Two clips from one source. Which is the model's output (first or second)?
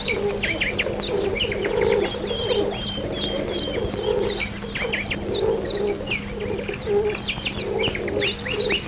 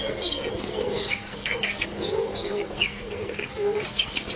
second